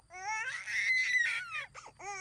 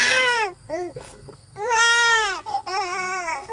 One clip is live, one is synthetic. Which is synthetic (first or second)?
second